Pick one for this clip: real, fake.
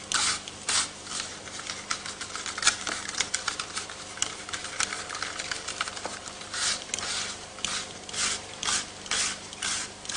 real